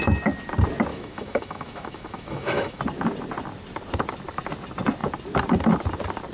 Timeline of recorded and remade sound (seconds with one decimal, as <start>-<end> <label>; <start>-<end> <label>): 0.0-0.9 recorded; 0.9-2.8 remade; 2.8-6.3 recorded